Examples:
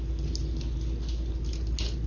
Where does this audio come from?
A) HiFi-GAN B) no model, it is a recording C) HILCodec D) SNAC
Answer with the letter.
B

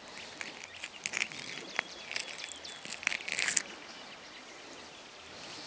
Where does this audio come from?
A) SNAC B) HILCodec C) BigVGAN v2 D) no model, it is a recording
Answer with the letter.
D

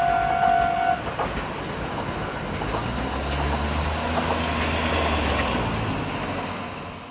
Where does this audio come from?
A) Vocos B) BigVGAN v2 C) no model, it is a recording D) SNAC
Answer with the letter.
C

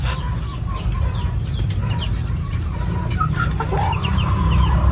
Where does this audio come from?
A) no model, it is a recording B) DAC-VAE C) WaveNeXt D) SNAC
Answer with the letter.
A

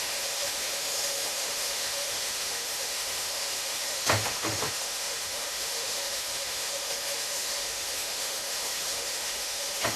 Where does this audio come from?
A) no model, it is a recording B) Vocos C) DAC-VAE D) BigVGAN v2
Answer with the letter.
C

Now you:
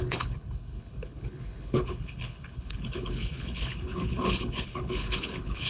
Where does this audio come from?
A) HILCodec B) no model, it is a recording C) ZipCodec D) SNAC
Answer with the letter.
A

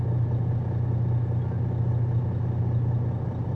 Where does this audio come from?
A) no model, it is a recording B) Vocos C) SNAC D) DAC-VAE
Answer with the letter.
A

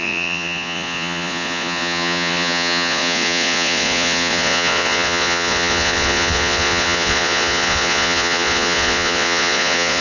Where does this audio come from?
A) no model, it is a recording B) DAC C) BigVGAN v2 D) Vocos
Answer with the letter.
D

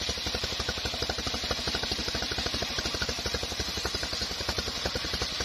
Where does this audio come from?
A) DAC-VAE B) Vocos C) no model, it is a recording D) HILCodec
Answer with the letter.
C